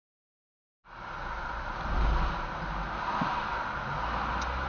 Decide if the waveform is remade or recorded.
recorded